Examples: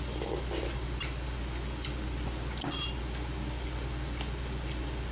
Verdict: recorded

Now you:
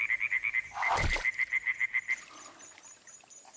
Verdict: recorded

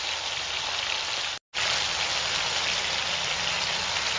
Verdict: recorded